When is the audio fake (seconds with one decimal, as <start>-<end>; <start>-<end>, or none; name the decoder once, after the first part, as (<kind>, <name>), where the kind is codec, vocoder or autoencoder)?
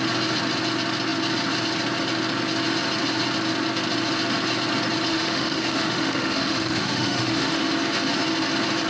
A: 5.1-7.6 (autoencoder, DAC-VAE)